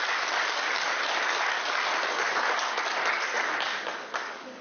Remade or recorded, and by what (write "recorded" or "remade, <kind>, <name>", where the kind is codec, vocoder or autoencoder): remade, codec, DAC